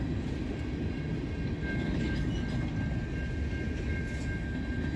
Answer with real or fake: real